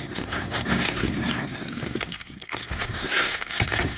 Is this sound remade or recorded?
remade